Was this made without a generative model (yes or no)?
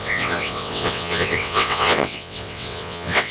no